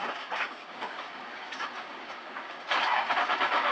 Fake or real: fake